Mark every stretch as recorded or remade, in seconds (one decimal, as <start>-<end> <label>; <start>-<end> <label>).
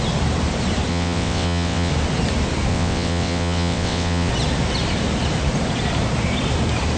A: 0.0-0.9 recorded; 0.9-1.9 remade; 1.9-2.7 recorded; 2.7-4.3 remade; 4.3-7.0 recorded